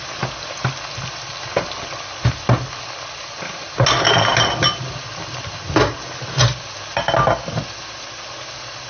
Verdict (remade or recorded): recorded